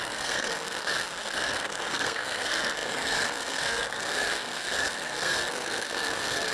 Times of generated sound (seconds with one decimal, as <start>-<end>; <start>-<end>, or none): 0.0-6.5